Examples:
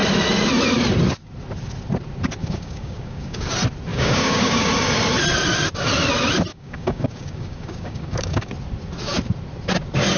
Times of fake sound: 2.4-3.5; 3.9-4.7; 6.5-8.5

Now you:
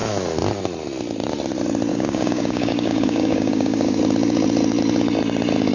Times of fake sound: 1.9-4.0

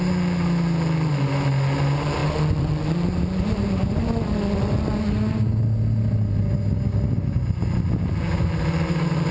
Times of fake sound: none

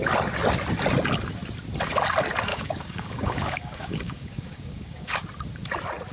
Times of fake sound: 2.5-5.3

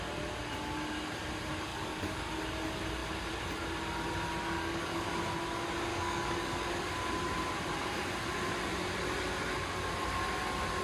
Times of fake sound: 1.7-2.3; 4.4-5.1; 5.9-6.9